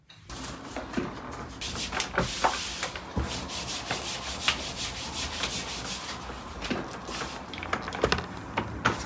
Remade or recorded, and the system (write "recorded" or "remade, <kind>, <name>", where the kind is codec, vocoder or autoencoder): recorded